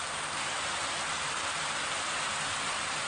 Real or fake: real